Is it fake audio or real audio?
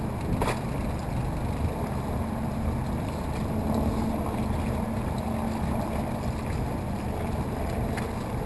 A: real